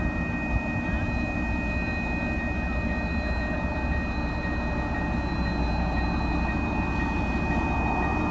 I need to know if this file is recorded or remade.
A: recorded